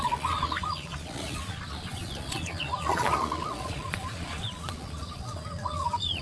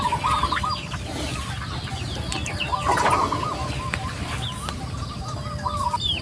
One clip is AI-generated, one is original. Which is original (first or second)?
second